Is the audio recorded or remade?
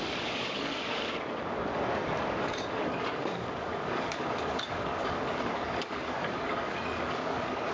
remade